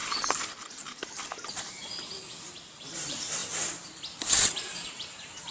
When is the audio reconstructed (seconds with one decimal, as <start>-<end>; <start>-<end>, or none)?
0.0-1.8; 2.8-3.4; 4.4-5.5